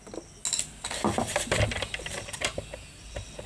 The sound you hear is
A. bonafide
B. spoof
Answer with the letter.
A